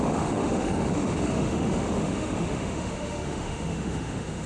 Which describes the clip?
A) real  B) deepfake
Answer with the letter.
B